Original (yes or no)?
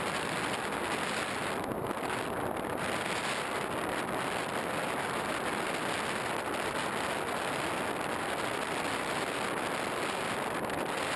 yes